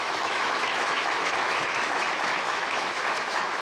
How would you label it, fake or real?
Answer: fake